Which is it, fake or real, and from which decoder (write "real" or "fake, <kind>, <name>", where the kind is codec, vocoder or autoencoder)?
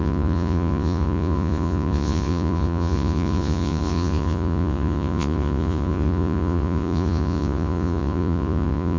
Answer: fake, vocoder, Vocos